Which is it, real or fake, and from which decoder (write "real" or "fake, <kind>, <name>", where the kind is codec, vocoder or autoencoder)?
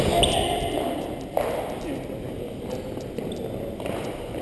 real